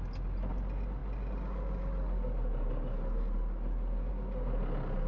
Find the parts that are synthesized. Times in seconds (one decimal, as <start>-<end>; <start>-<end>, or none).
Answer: none